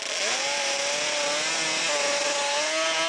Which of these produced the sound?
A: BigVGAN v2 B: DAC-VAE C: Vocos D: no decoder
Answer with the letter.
D